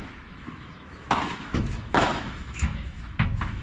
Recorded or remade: remade